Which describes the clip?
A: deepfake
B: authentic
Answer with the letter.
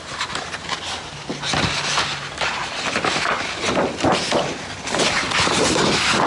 B